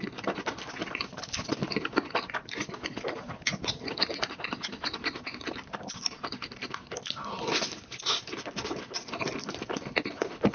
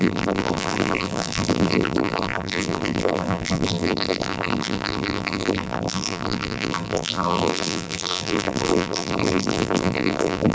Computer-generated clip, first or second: second